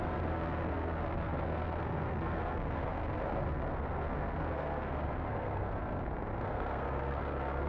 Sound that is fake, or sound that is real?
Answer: fake